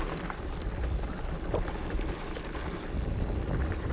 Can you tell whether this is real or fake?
real